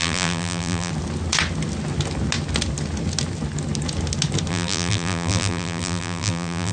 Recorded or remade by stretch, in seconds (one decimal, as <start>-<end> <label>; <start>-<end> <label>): 0.0-0.9 remade; 0.9-4.5 recorded; 4.5-6.7 remade